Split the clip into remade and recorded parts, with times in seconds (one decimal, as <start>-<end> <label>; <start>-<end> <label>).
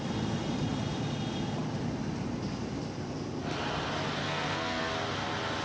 0.0-4.2 recorded; 4.2-4.8 remade; 4.8-5.6 recorded